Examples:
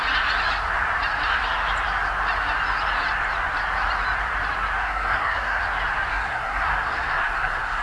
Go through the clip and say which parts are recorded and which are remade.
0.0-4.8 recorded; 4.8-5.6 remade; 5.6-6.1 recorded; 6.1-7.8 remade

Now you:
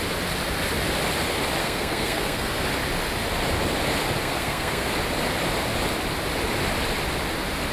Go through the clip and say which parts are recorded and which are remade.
0.0-1.6 recorded; 1.6-2.6 remade; 2.6-4.2 recorded; 4.2-4.9 remade; 4.9-7.7 recorded

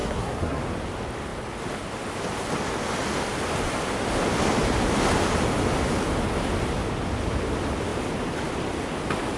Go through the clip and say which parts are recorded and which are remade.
0.0-0.6 remade; 0.6-9.4 recorded

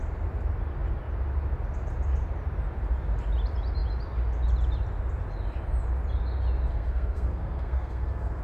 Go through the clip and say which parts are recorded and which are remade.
0.0-6.7 recorded; 6.7-8.4 remade

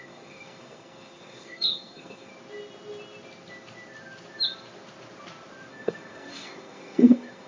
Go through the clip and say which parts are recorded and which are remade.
0.0-2.3 remade; 2.3-5.7 recorded; 5.7-7.5 remade

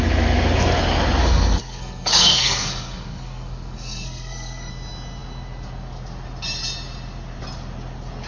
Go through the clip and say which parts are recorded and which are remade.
0.0-1.2 recorded; 1.2-4.7 remade; 4.7-8.3 recorded